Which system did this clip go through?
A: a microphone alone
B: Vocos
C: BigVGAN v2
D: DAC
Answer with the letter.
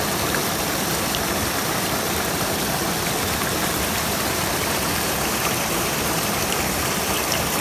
C